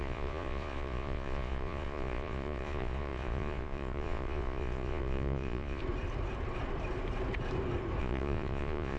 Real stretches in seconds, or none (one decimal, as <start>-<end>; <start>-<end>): 5.8-8.0